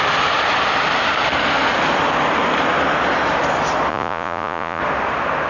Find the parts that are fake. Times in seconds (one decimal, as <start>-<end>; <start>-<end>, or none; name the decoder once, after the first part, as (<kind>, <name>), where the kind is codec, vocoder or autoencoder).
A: 3.9-4.8 (vocoder, Vocos)